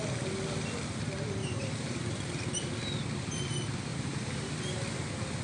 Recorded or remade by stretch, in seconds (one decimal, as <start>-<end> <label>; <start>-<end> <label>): 0.0-1.4 recorded; 1.4-2.7 remade; 2.7-3.9 recorded; 3.9-4.5 remade; 4.5-5.4 recorded